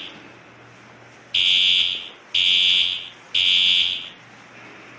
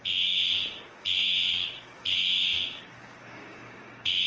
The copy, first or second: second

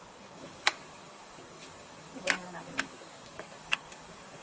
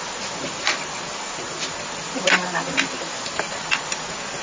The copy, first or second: first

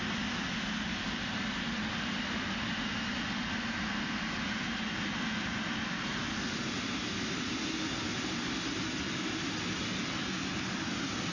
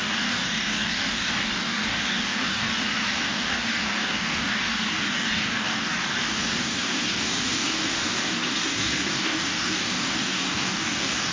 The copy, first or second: second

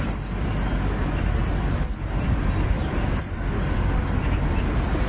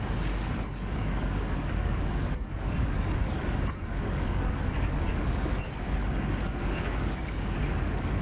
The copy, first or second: second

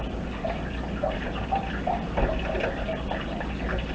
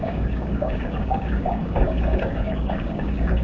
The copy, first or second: second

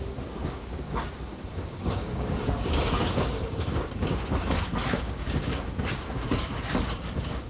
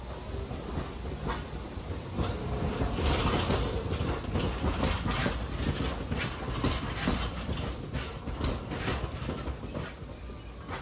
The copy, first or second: first